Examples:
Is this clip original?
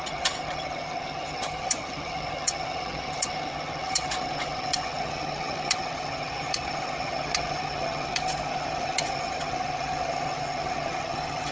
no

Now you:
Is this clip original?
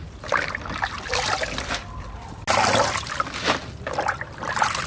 yes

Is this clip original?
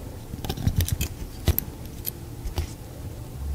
yes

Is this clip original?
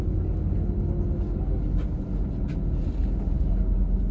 yes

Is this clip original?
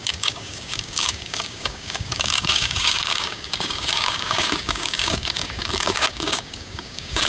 no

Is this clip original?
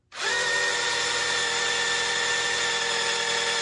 yes